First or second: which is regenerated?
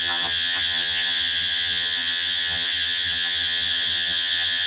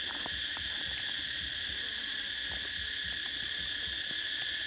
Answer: first